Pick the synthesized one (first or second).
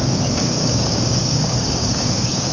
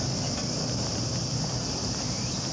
first